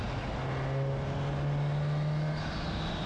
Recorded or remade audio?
recorded